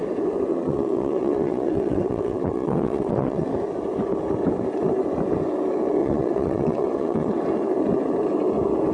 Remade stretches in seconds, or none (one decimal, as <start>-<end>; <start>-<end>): 0.5-3.5; 6.0-7.4